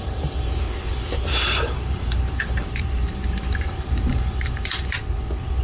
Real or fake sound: fake